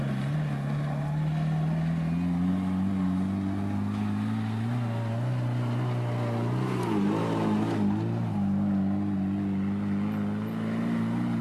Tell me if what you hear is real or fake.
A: real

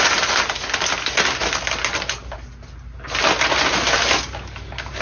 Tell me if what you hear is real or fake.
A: real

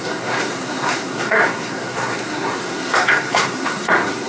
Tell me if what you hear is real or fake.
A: fake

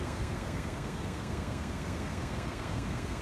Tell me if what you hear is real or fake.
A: fake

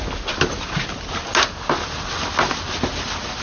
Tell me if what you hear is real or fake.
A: real